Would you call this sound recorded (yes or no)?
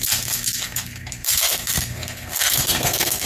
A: no